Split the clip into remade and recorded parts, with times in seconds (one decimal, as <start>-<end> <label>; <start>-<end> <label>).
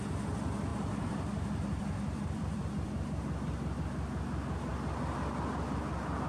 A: 0.0-0.7 recorded; 0.7-3.8 remade; 3.8-6.3 recorded